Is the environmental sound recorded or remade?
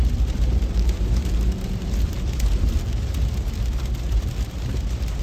remade